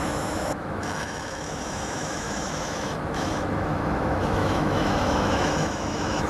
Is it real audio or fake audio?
fake